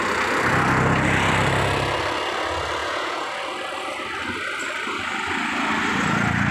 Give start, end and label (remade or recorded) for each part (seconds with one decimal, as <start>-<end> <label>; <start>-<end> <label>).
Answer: 0.0-2.8 recorded; 2.8-3.3 remade; 3.3-6.5 recorded